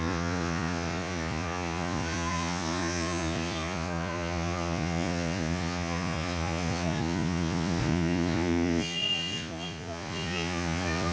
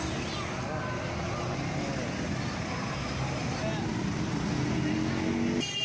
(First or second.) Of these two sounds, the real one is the second